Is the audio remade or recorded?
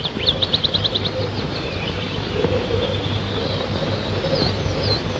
remade